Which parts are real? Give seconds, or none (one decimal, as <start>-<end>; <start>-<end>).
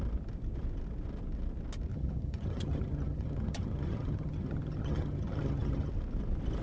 0.0-1.9; 5.9-6.6